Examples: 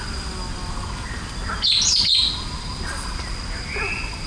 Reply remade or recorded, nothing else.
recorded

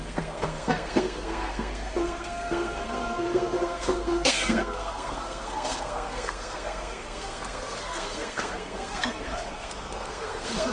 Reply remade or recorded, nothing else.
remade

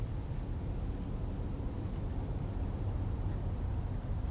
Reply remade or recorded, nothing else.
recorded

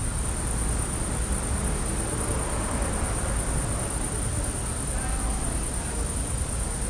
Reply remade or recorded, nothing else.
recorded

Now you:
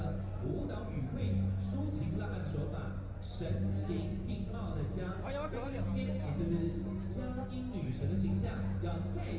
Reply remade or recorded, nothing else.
recorded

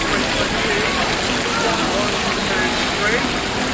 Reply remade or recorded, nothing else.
recorded